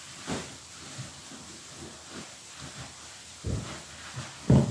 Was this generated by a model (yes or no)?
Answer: yes